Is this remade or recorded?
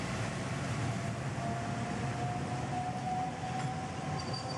recorded